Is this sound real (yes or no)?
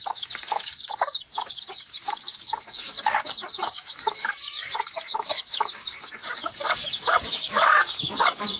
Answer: no